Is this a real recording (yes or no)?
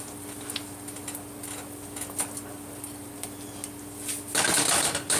yes